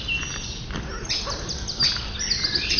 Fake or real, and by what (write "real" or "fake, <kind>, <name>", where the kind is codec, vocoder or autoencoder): real